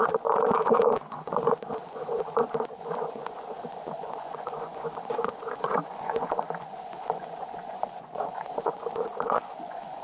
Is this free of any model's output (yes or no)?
no